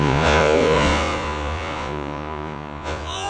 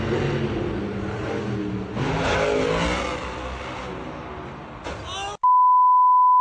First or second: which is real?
second